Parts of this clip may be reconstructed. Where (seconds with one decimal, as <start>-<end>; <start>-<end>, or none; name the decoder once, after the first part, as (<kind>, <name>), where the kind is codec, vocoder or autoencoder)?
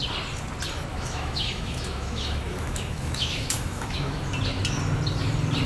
0.9-4.3 (autoencoder, DAC-VAE)